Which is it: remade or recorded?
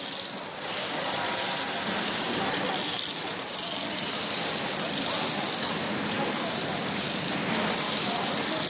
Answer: recorded